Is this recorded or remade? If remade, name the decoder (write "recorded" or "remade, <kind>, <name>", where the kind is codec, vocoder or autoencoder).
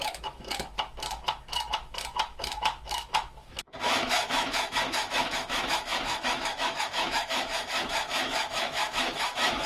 remade, autoencoder, DAC-VAE